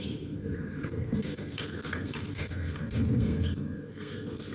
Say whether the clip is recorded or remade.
remade